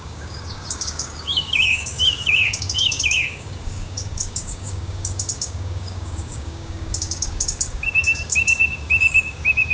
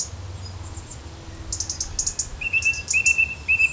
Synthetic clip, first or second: first